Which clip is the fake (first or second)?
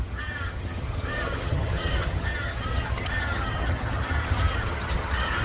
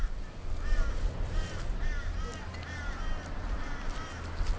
first